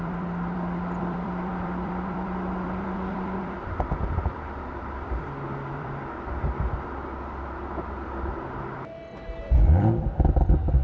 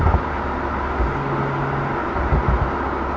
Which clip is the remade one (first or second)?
first